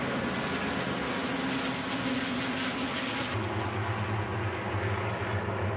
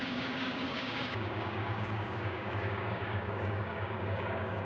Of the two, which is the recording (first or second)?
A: first